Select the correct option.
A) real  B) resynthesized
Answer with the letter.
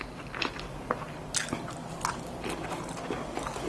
A